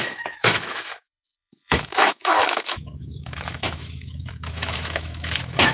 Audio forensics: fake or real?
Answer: fake